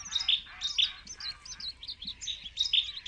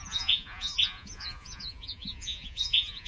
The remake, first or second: second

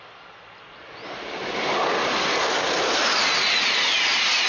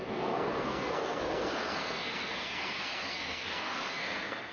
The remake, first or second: second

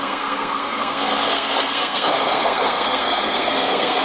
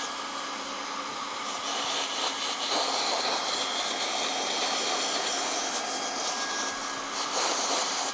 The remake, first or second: first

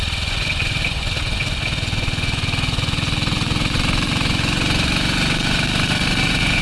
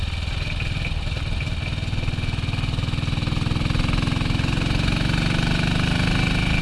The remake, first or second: first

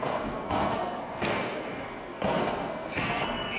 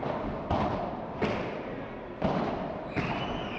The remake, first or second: first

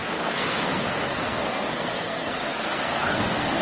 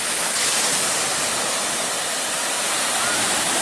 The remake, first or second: first